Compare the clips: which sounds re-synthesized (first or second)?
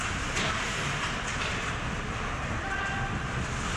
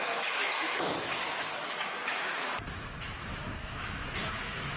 second